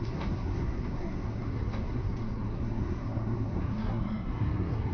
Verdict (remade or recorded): remade